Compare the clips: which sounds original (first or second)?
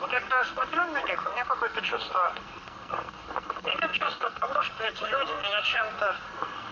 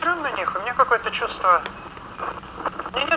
second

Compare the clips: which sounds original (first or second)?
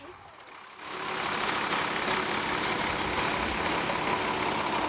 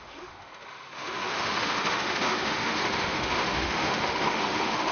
first